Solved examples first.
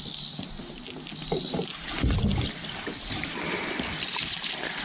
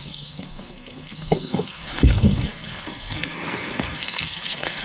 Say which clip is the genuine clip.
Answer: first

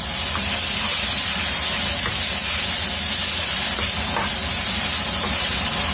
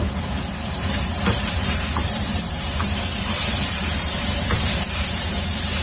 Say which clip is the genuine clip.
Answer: first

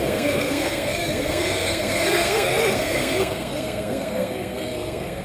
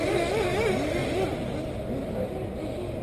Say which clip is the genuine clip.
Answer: second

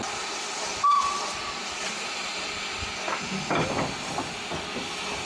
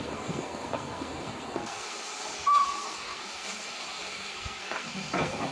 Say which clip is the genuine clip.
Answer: first